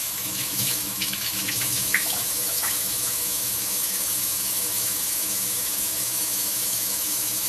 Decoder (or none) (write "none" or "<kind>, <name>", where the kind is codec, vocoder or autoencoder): autoencoder, DAC-VAE